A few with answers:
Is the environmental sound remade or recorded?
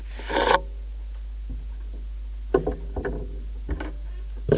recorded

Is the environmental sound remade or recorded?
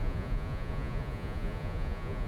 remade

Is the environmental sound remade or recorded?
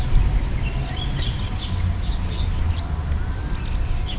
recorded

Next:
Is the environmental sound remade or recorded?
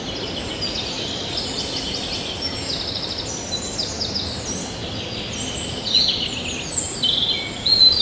recorded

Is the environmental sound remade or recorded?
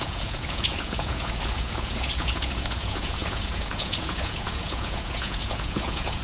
remade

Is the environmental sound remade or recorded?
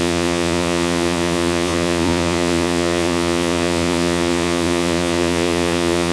remade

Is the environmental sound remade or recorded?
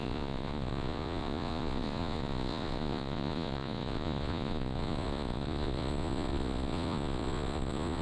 remade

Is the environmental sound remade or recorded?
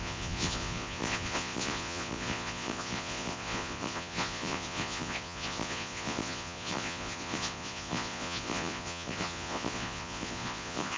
remade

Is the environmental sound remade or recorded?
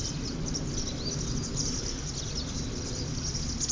recorded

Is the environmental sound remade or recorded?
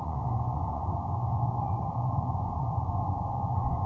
remade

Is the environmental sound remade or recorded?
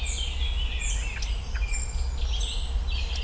recorded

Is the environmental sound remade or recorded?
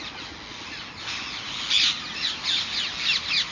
recorded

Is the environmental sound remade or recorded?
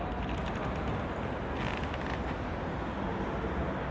recorded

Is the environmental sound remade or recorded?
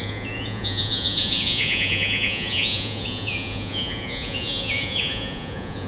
remade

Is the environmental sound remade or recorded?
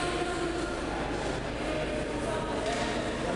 recorded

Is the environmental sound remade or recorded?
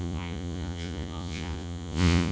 remade